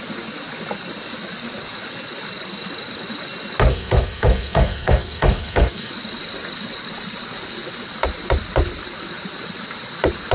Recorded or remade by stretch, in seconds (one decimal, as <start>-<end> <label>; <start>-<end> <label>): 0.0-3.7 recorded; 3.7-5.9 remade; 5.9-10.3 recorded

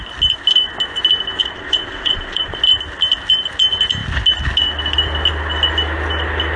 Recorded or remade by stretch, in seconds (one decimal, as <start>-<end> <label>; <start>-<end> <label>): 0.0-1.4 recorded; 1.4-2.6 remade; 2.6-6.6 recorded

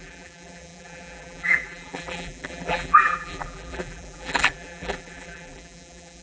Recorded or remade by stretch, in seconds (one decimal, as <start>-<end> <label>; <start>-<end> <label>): 0.0-6.2 remade

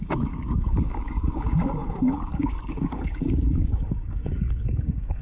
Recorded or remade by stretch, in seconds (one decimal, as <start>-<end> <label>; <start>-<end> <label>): 0.0-5.2 remade

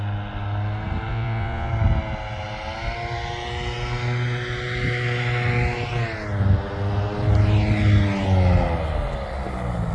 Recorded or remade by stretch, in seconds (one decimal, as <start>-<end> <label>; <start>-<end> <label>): 0.0-1.1 recorded; 1.1-1.7 remade; 1.7-9.9 recorded

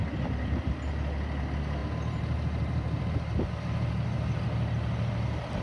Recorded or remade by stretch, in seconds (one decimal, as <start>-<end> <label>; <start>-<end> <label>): 0.0-0.7 remade; 0.7-1.8 recorded; 1.8-3.1 remade; 3.1-5.6 recorded

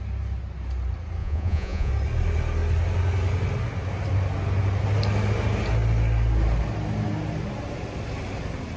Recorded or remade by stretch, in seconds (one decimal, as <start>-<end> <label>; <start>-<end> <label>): 0.0-1.2 recorded; 1.2-1.9 remade; 1.9-8.8 recorded